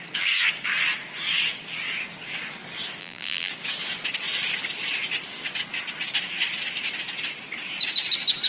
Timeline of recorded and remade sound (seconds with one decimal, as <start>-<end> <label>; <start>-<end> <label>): 0.0-3.0 recorded; 3.0-3.5 remade; 3.5-8.5 recorded